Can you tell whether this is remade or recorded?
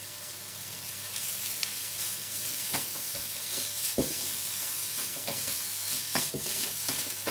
remade